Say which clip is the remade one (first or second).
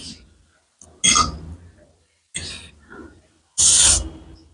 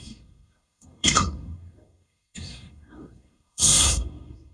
second